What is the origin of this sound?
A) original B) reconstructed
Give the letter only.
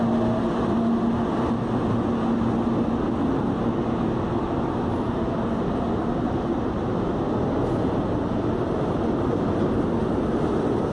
A